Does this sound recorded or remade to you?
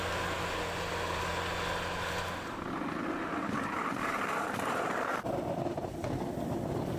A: recorded